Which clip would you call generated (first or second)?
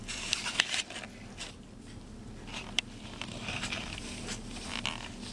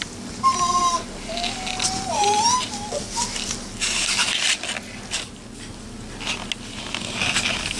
first